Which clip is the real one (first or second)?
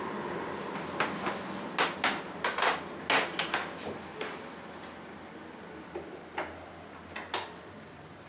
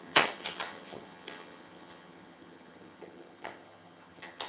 first